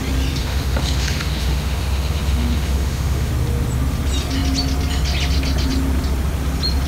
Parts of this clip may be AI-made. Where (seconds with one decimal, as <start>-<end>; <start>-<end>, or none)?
0.4-3.3